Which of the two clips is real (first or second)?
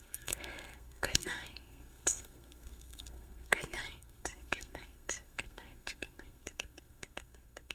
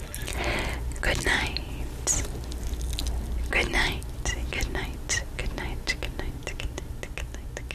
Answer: second